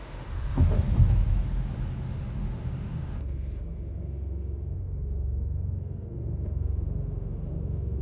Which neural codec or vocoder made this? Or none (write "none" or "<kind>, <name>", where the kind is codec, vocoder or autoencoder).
autoencoder, DAC-VAE